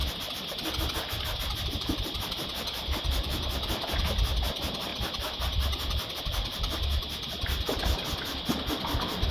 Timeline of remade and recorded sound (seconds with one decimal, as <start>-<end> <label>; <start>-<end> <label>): 0.0-9.3 recorded